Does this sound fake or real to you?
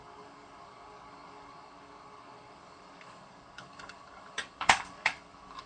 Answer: fake